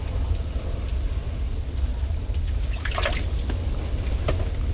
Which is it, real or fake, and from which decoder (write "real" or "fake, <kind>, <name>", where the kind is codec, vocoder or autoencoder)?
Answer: real